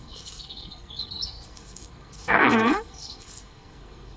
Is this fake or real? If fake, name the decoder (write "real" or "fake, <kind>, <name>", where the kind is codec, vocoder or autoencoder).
fake, codec, SNAC